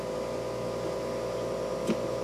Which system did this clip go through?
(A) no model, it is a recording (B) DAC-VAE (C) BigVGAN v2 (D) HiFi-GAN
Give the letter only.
A